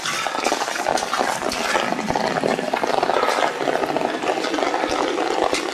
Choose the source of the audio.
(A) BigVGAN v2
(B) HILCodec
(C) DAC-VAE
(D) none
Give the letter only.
D